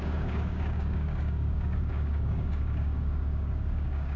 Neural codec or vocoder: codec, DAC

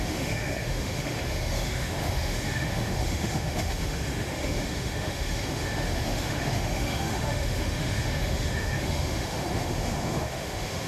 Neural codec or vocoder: autoencoder, DAC-VAE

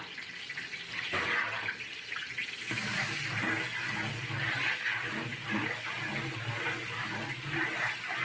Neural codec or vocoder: none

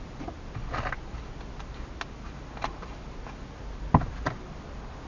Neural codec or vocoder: none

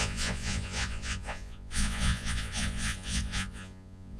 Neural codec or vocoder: vocoder, Vocos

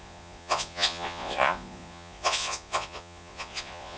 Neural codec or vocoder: vocoder, Vocos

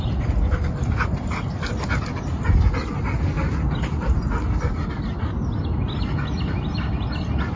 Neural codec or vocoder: none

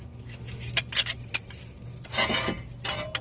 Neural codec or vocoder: none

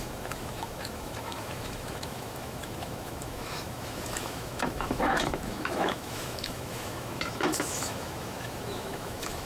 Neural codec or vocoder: autoencoder, DAC-VAE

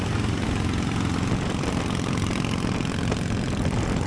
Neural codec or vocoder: none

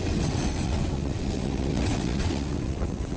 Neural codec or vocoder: vocoder, WaveNeXt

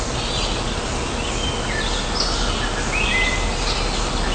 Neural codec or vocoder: none